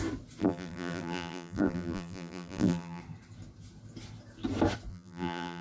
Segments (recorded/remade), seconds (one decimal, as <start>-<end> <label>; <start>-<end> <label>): 0.0-0.4 recorded; 0.4-3.0 remade; 3.0-4.9 recorded; 4.9-5.6 remade